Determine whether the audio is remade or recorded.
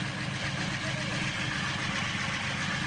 recorded